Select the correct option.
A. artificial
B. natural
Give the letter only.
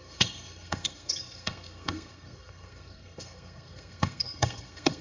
A